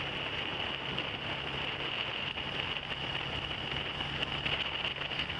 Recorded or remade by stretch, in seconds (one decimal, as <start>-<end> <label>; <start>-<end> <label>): 0.0-5.4 recorded